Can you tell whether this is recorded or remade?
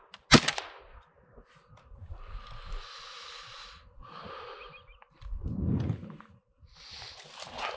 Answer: recorded